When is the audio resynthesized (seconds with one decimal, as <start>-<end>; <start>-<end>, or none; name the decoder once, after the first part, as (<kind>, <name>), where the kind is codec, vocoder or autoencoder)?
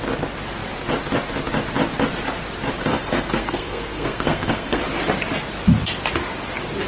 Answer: 2.9-4.8 (codec, SNAC)